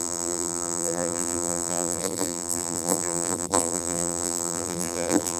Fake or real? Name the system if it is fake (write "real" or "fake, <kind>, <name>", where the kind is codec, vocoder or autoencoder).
fake, vocoder, BigVGAN v2